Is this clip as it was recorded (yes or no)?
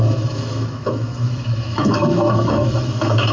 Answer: no